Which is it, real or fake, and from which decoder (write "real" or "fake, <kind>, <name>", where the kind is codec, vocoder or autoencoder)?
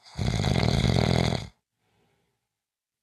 real